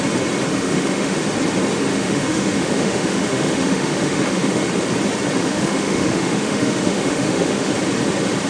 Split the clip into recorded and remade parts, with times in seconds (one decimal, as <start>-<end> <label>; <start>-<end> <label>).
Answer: 0.0-0.5 recorded; 0.5-1.2 remade; 1.2-1.9 recorded; 1.9-4.6 remade; 4.6-5.4 recorded; 5.4-7.7 remade; 7.7-8.5 recorded

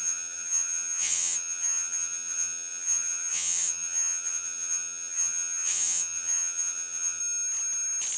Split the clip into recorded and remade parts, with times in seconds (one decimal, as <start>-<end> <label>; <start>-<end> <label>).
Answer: 0.0-7.2 remade; 7.2-8.2 recorded

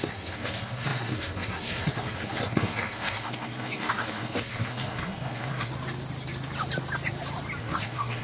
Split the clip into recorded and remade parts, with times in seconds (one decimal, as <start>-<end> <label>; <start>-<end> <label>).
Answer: 0.0-5.7 remade; 5.7-7.6 recorded; 7.6-8.2 remade

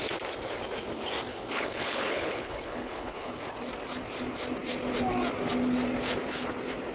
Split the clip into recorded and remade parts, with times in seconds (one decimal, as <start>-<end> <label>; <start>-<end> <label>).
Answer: 0.0-1.3 recorded; 1.3-3.3 remade; 3.3-6.9 recorded

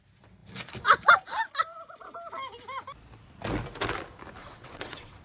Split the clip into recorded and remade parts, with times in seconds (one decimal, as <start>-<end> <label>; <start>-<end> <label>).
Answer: 0.0-4.4 recorded; 4.4-5.2 remade